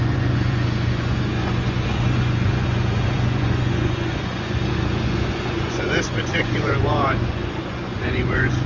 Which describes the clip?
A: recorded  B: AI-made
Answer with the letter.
B